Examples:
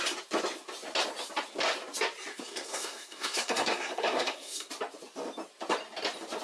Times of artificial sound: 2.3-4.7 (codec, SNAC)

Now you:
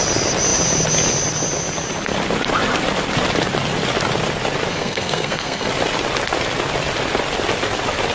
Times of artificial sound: 4.7-5.7 (codec, SNAC)

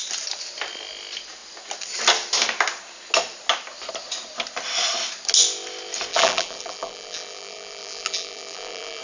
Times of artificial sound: 6.1-9.0 (vocoder, BigVGAN v2)